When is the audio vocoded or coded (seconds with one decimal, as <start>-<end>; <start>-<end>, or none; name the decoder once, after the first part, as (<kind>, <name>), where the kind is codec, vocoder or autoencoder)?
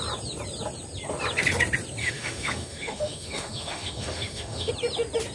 2.0-4.7 (autoencoder, DAC-VAE)